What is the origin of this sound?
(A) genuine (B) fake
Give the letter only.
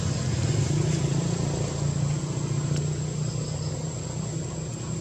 A